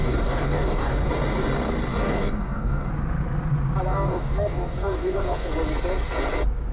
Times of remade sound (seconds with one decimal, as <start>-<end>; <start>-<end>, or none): 0.0-1.1; 1.9-2.9; 3.9-5.5